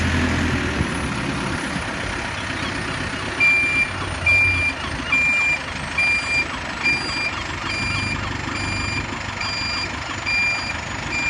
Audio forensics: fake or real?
real